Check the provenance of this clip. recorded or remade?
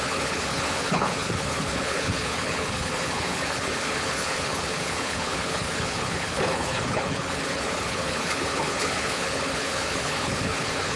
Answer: remade